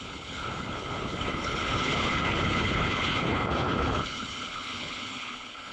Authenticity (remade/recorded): remade